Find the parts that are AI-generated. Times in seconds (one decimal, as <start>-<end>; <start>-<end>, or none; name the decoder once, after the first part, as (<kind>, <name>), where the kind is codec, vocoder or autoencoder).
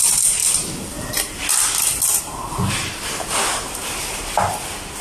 none